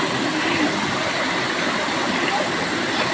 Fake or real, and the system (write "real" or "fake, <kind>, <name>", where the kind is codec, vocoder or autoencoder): real